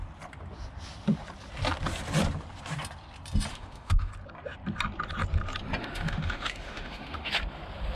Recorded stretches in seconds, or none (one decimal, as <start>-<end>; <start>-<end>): 0.0-3.5; 4.1-5.8; 7.3-8.0